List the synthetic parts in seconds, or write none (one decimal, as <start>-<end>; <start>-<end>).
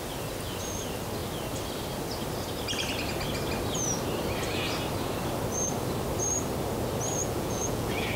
7.2-8.2